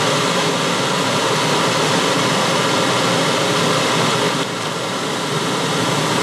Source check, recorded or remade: recorded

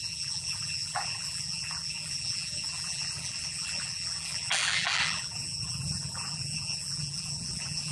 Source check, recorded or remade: remade